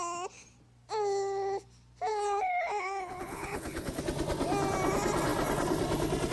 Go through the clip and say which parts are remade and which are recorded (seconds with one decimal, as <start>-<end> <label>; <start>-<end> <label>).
0.0-2.1 recorded; 2.1-4.0 remade; 4.0-6.3 recorded